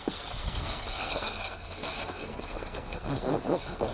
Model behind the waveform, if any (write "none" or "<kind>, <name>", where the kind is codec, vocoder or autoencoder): codec, SNAC